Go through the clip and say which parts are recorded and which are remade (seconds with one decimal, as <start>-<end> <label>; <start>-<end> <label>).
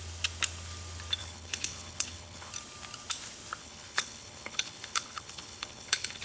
0.0-1.2 recorded; 1.2-2.5 remade; 2.5-3.6 recorded; 3.6-6.2 remade